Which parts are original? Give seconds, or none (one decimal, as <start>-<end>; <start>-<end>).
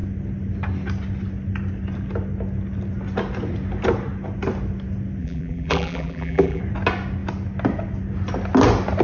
0.0-5.2; 6.6-9.0